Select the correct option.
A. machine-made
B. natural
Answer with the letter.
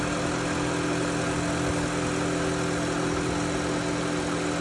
B